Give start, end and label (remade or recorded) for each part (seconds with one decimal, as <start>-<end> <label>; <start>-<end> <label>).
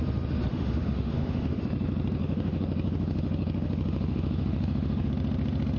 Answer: 0.0-0.5 recorded; 0.5-1.6 remade; 1.6-2.2 recorded; 2.2-5.1 remade; 5.1-5.8 recorded